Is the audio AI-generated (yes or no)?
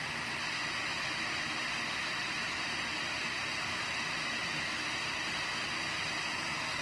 no